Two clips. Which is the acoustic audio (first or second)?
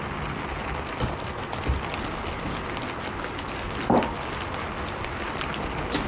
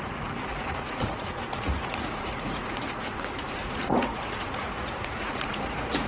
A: first